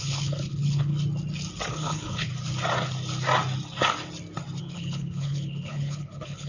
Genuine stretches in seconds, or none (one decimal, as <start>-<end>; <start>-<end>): 0.9-1.7; 2.3-4.6